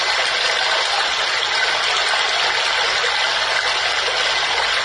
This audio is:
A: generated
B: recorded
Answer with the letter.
B